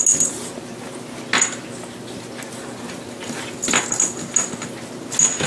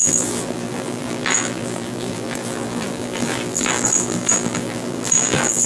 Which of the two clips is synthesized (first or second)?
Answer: second